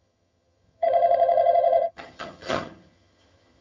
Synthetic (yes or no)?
yes